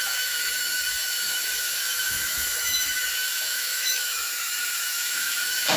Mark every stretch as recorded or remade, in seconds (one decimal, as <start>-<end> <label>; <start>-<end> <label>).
0.0-5.8 remade